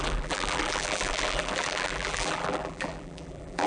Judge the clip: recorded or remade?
remade